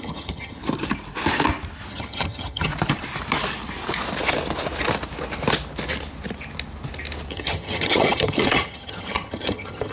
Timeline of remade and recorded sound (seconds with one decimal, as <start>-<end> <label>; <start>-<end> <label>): 0.0-0.6 remade; 0.6-1.9 recorded; 1.9-2.7 remade; 2.7-7.3 recorded; 7.3-9.9 remade